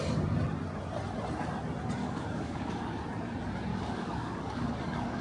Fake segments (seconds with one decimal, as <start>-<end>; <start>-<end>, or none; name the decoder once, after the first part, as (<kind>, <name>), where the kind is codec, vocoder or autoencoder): 2.0-3.0 (codec, DAC); 3.7-5.2